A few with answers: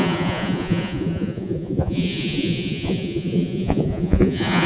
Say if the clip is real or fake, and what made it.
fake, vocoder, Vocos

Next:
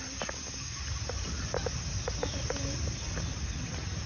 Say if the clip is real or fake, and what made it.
real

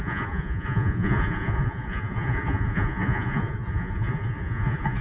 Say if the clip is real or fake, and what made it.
fake, vocoder, Vocos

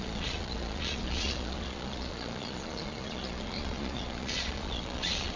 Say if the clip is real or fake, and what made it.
fake, vocoder, Vocos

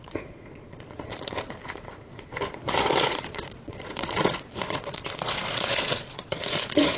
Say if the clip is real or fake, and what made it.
fake, vocoder, Vocos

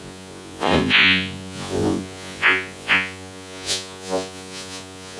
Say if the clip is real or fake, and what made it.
fake, vocoder, Vocos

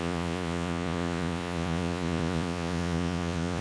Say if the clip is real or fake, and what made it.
fake, vocoder, Vocos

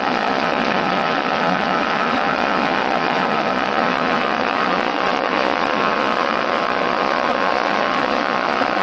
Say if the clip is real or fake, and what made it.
fake, vocoder, Vocos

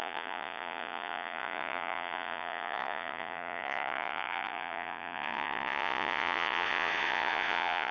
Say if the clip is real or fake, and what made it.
fake, vocoder, Vocos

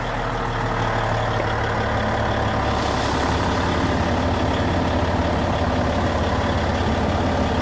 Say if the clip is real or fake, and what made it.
real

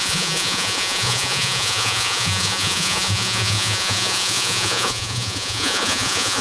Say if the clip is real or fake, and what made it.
fake, vocoder, Vocos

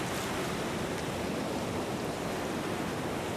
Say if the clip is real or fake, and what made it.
real